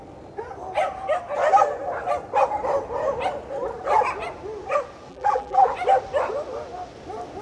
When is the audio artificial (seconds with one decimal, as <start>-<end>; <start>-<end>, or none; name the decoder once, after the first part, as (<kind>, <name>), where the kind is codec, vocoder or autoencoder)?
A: 5.1-5.7 (vocoder, BigVGAN v2)